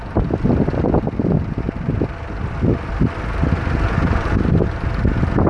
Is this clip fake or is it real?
real